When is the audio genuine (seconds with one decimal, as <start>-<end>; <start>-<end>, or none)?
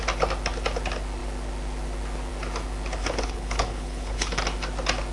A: 0.0-3.0; 4.4-5.1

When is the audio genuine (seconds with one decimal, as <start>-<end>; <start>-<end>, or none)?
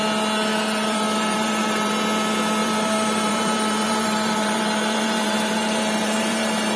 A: 0.0-0.5; 1.9-2.6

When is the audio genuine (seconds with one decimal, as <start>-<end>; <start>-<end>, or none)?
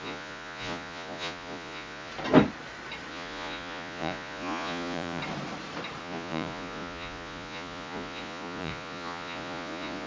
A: 2.1-3.1; 5.2-6.0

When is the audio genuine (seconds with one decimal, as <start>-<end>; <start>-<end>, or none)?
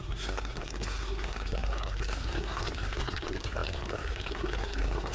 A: none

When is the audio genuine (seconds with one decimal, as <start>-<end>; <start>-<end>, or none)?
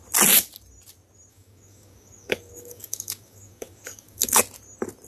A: 0.0-1.3; 4.4-5.1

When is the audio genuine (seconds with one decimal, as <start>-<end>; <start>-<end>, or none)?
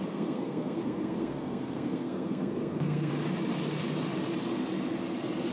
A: 3.1-5.5